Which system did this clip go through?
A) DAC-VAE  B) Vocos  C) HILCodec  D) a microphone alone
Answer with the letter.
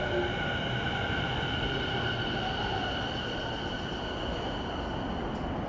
D